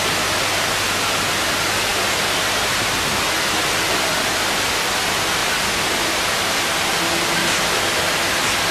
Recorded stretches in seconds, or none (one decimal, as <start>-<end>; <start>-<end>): 0.0-5.4; 6.0-8.7